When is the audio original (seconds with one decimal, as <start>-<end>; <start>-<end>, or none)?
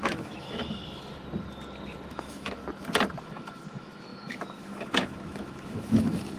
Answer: 0.8-2.1; 2.6-3.2